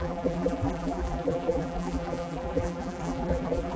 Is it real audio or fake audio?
fake